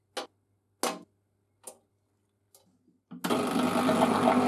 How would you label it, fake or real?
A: real